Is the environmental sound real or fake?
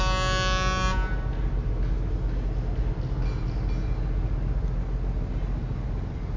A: real